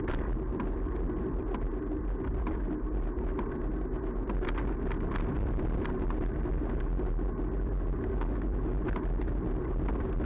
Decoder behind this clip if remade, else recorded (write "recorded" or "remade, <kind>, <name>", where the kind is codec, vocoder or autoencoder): recorded